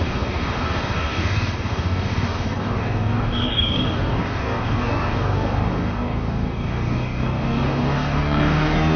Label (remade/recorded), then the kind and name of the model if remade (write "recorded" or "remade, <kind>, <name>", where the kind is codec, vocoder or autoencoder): remade, codec, DAC